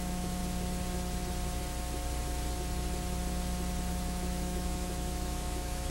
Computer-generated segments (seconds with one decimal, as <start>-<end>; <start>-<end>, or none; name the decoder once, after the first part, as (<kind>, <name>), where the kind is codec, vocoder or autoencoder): 0.0-0.4 (autoencoder, DAC-VAE); 3.9-5.9